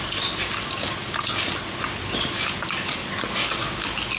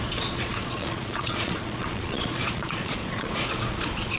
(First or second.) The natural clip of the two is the first